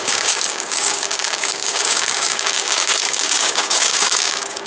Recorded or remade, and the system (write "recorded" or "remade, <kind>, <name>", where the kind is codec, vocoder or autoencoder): remade, codec, DAC